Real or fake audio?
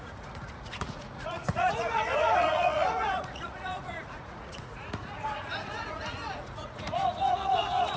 fake